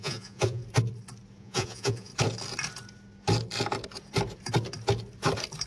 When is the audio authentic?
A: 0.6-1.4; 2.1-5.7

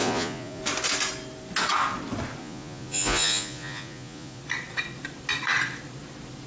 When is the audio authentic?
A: 0.6-2.4; 4.4-6.5

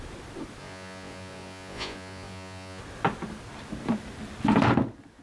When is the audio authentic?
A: 0.0-0.6; 2.8-5.2

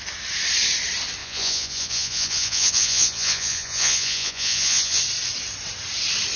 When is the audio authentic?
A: 0.0-1.2; 5.0-6.4